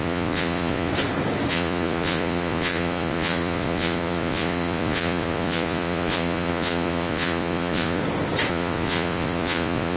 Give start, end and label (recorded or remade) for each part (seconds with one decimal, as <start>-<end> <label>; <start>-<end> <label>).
0.0-0.9 remade; 0.9-1.5 recorded; 1.5-8.0 remade; 8.0-8.5 recorded; 8.5-10.0 remade